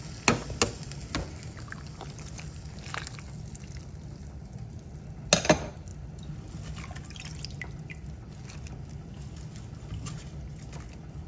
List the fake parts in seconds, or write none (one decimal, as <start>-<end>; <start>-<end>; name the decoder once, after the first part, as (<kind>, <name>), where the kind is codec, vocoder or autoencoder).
none